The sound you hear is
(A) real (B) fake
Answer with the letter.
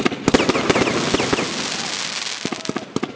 A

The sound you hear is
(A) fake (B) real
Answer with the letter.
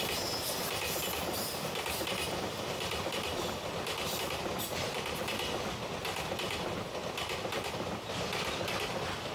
B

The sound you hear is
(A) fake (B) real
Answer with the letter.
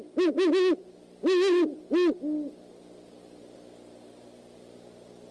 B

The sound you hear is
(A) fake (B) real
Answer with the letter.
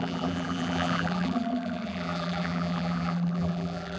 A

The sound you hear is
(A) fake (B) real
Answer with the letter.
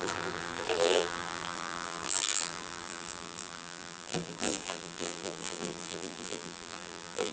A